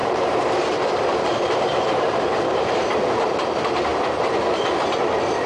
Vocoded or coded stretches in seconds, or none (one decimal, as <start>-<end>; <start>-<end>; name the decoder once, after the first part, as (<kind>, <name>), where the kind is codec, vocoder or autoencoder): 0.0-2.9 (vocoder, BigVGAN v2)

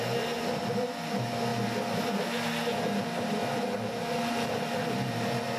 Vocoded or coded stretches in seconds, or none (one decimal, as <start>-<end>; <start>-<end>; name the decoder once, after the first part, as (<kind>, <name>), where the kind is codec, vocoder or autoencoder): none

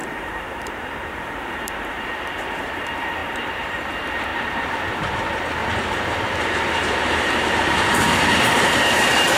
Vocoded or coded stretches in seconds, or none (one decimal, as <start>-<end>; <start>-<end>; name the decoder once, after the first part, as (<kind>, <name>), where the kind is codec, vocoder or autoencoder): 0.0-1.9 (vocoder, BigVGAN v2); 3.2-3.8; 4.3-5.0; 5.6-9.4

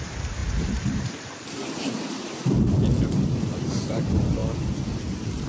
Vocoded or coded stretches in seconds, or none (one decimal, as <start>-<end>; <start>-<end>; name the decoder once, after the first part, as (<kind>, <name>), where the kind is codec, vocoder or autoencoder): 0.0-4.4 (vocoder, BigVGAN v2)

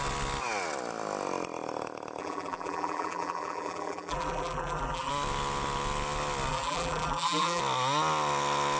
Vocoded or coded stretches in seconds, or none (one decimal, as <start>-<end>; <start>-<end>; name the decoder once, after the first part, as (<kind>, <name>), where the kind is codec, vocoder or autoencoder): 2.2-5.1 (vocoder, BigVGAN v2); 6.5-7.6